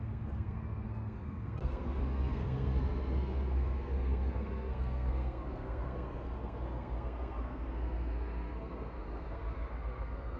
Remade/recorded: remade